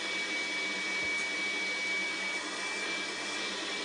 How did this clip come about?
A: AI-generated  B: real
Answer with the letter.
B